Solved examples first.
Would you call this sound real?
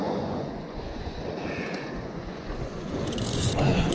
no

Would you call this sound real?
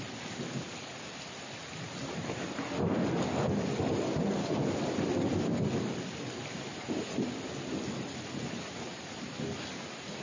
yes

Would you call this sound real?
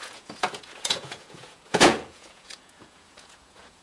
no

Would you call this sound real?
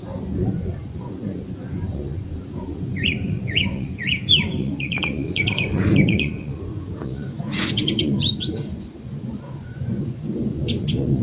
no